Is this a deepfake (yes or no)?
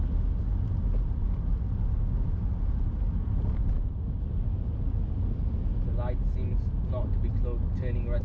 no